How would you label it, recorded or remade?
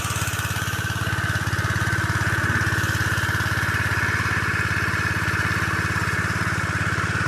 recorded